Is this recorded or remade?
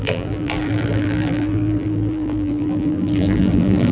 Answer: remade